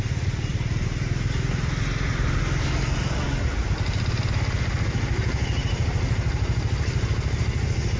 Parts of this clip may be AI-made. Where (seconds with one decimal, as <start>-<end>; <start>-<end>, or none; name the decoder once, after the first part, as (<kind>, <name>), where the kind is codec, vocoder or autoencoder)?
none